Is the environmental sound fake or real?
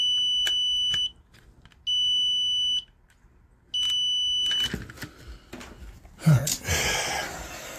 real